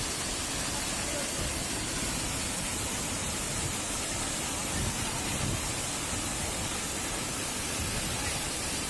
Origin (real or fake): real